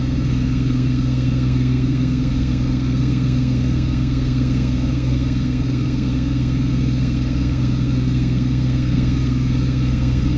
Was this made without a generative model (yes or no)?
no